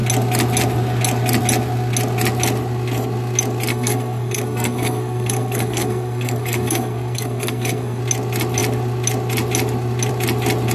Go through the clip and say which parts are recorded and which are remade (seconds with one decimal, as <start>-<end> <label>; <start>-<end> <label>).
0.0-3.7 recorded; 3.7-8.0 remade; 8.0-10.7 recorded